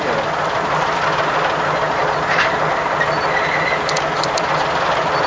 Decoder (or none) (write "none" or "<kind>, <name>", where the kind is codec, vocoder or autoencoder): none